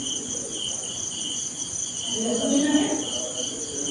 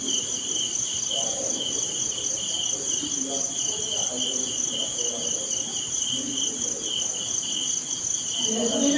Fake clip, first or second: first